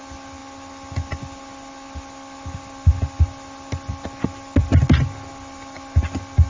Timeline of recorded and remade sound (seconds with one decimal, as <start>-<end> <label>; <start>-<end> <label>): 0.0-6.5 recorded